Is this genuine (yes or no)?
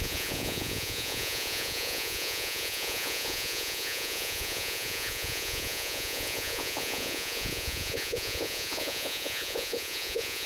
no